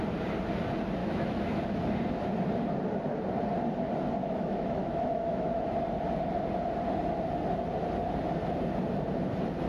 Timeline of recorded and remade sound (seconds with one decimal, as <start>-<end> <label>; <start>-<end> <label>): 0.0-1.0 recorded; 1.0-1.6 remade; 1.6-4.2 recorded; 4.2-5.5 remade; 5.5-9.7 recorded